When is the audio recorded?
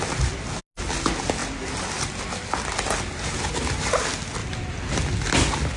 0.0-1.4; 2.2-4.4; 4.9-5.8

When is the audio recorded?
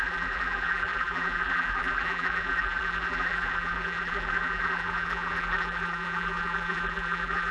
none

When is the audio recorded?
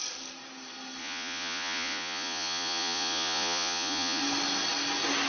0.0-1.0; 4.2-5.3